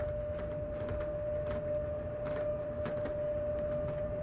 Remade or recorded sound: recorded